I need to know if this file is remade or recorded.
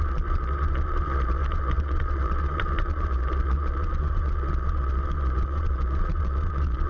remade